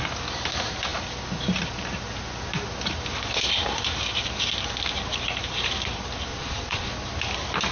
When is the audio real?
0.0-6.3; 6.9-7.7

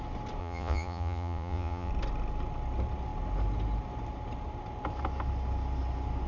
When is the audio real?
0.0-0.4; 1.9-6.3

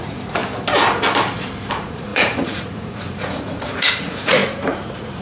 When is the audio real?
0.4-1.7